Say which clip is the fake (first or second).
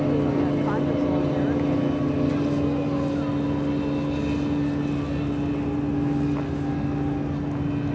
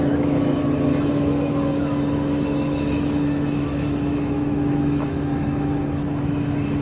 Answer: second